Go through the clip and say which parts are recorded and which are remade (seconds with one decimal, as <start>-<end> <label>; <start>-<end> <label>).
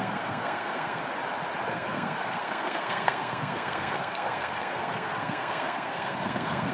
0.0-1.0 remade; 1.0-1.7 recorded; 1.7-6.7 remade